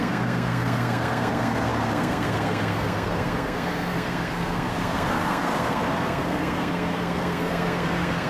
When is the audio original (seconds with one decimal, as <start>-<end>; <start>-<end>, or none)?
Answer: none